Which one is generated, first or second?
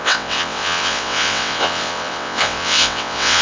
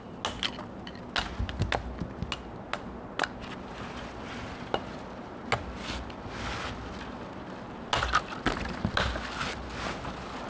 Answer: first